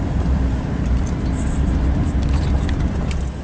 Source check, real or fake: fake